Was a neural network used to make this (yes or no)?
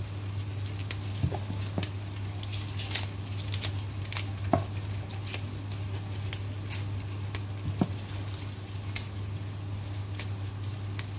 no